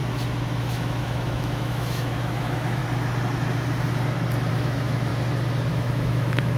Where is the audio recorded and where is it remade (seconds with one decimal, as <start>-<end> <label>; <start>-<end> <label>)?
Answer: 0.0-0.6 recorded; 0.6-2.8 remade; 2.8-4.5 recorded; 4.5-5.1 remade; 5.1-5.7 recorded; 5.7-6.6 remade